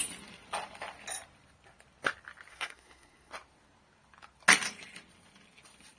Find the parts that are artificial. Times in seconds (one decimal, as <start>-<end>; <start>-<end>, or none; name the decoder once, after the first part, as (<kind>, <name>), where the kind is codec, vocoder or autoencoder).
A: 2.5-3.3 (codec, SNAC)